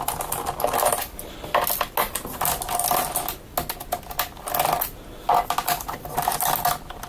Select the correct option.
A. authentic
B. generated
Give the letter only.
A